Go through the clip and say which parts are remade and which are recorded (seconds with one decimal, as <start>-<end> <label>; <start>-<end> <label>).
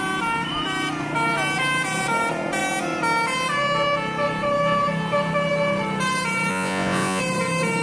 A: 0.0-6.5 recorded; 6.5-7.2 remade; 7.2-7.8 recorded